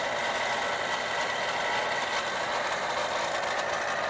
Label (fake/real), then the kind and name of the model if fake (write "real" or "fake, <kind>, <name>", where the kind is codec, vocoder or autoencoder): real